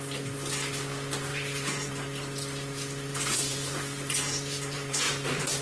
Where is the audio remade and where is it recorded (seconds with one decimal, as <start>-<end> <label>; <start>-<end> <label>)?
0.0-1.3 recorded; 1.3-1.9 remade; 1.9-3.1 recorded; 3.1-5.1 remade; 5.1-5.6 recorded

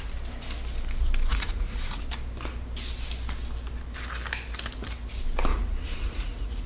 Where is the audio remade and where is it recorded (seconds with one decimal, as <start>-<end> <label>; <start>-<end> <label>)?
0.0-1.3 recorded; 1.3-2.0 remade; 2.0-5.5 recorded; 5.5-6.7 remade

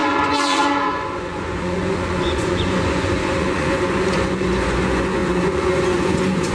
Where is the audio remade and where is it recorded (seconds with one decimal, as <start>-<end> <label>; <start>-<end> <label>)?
0.0-6.5 remade

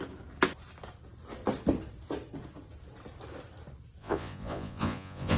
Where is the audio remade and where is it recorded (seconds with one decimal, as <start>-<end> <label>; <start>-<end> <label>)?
0.0-4.0 recorded; 4.0-5.4 remade